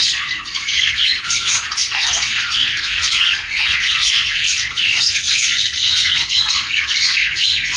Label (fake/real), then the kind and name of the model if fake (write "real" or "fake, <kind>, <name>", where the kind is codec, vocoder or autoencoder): fake, codec, SNAC